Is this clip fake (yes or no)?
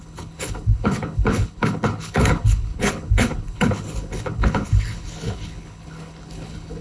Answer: yes